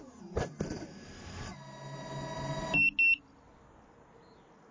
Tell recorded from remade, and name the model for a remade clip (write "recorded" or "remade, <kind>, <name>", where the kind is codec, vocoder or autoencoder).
recorded